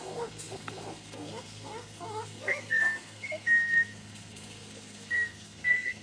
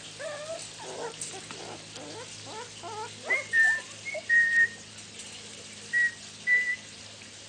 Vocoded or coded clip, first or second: first